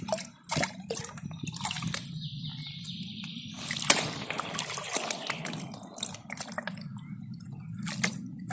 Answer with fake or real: real